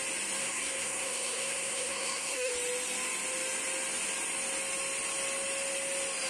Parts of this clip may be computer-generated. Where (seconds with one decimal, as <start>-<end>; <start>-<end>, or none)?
0.4-2.5